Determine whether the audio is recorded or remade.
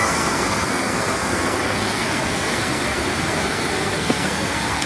remade